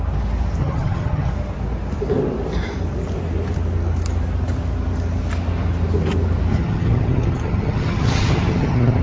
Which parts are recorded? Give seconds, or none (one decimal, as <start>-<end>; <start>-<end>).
0.0-0.6; 1.3-6.5